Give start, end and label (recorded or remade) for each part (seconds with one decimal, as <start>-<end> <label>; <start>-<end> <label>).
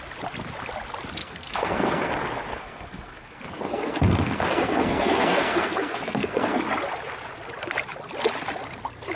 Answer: 0.0-1.2 recorded; 1.2-2.1 remade; 2.1-2.5 recorded; 2.5-6.6 remade; 6.6-9.2 recorded